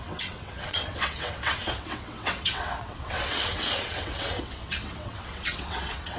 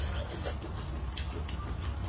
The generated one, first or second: first